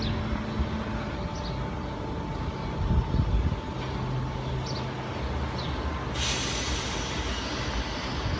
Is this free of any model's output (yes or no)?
yes